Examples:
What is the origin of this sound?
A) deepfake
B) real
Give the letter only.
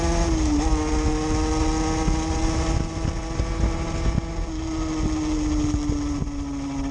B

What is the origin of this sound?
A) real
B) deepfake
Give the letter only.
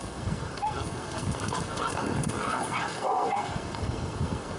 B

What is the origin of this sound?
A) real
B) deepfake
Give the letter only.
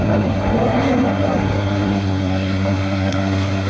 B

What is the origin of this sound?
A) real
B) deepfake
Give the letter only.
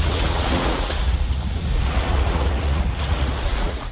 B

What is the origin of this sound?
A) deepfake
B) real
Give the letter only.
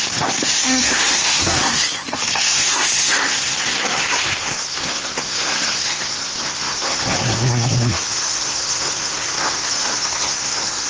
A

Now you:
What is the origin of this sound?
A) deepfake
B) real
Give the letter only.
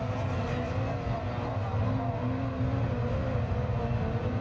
B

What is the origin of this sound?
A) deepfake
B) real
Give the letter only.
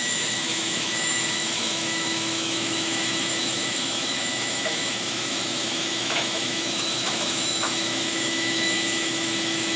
A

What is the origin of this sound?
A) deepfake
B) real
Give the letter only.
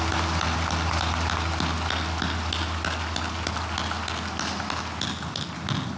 B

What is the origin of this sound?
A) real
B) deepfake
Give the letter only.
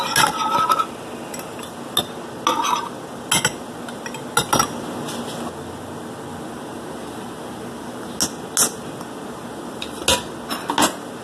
A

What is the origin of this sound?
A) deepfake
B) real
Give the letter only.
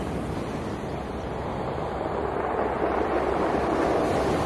B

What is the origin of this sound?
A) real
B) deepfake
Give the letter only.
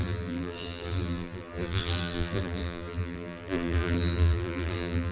B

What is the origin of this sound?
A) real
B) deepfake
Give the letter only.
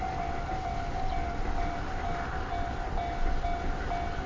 A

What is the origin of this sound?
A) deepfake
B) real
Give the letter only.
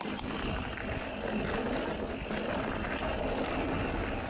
B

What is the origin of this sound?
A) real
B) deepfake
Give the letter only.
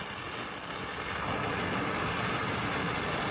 A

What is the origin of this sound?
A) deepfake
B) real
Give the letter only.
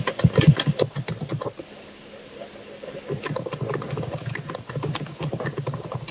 B